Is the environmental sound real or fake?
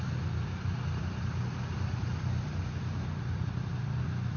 real